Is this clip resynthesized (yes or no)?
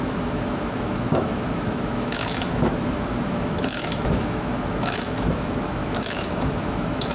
yes